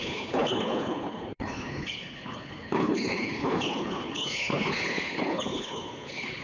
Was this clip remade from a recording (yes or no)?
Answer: yes